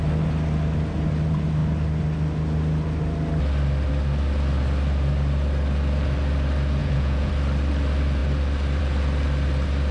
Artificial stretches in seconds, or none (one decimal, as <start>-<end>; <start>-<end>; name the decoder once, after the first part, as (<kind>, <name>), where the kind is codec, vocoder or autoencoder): 6.8-7.3 (vocoder, Vocos)